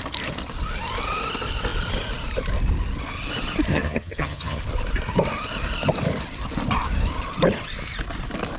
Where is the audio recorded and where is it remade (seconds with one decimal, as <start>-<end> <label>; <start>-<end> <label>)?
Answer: 0.0-3.7 recorded; 3.7-4.6 remade; 4.6-8.6 recorded